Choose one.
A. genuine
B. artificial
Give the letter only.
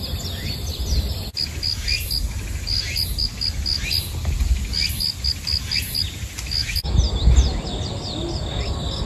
A